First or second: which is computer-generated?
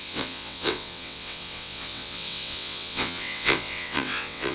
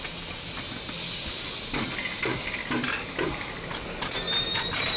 first